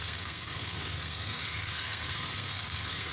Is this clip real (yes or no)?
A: no